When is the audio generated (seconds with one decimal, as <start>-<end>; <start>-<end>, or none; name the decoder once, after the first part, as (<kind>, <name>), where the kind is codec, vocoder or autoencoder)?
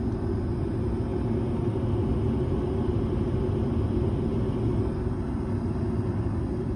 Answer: none